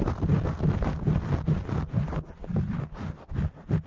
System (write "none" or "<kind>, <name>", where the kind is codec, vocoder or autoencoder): none